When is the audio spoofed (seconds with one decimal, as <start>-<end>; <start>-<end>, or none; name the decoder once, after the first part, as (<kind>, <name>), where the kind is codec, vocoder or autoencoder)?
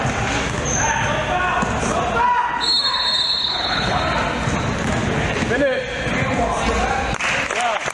3.4-4.0 (codec, HILCodec)